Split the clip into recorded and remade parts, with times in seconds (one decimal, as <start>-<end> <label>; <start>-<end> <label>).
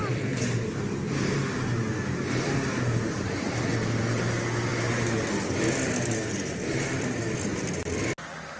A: 0.0-8.6 recorded